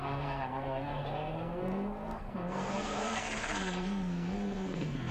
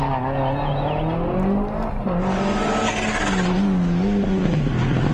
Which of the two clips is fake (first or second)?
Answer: first